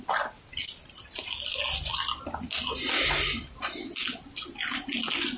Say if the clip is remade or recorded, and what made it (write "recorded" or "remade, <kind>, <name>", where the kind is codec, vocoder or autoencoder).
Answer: recorded